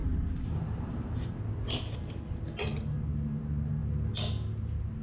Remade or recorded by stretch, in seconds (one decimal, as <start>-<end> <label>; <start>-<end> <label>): 0.0-1.4 remade; 1.4-5.0 recorded